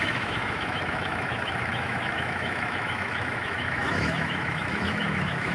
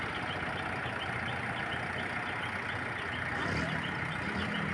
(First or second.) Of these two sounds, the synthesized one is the first